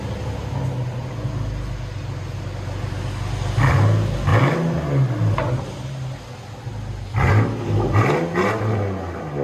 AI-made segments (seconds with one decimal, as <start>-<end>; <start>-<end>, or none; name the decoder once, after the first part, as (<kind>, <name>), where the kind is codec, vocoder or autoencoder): none